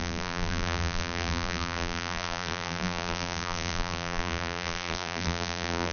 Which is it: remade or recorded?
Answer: remade